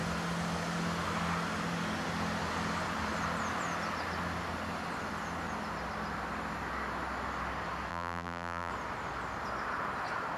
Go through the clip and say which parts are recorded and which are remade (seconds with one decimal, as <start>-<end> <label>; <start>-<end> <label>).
0.0-7.9 recorded; 7.9-8.7 remade; 8.7-10.4 recorded